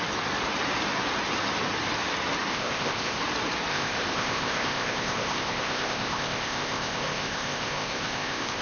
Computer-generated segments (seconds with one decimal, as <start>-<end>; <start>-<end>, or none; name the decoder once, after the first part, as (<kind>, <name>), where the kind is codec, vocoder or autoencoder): 2.5-3.2 (codec, ZipCodec); 3.7-8.6